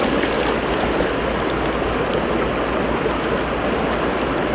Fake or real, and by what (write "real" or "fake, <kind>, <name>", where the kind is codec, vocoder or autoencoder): real